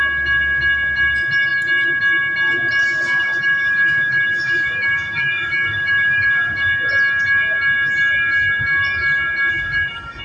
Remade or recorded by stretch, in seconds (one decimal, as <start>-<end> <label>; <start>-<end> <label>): 0.0-2.8 recorded; 2.8-6.7 remade; 6.7-9.5 recorded; 9.5-10.2 remade